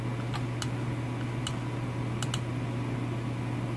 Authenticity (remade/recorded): recorded